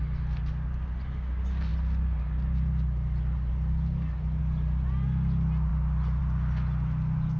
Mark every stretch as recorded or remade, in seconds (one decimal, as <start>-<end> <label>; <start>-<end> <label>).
0.0-7.4 recorded